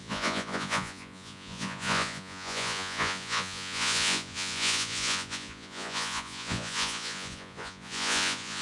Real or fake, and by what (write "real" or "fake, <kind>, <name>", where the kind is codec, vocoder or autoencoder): fake, vocoder, Vocos